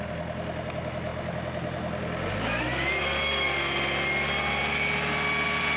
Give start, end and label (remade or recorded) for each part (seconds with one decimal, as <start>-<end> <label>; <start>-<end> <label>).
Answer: 0.0-5.8 recorded